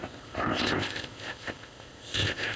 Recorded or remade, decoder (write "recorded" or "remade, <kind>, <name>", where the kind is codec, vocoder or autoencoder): remade, codec, ZipCodec